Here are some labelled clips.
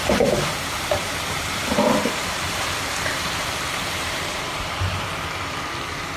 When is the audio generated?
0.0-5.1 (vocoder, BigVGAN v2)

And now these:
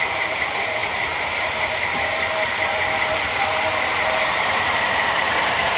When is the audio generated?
0.0-5.8 (vocoder, BigVGAN v2)

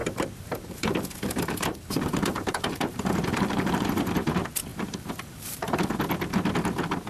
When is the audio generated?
0.0-4.3 (vocoder, BigVGAN v2); 4.7-5.9